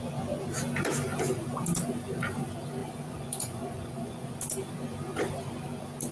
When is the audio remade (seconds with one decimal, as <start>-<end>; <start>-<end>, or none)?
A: 2.8-4.3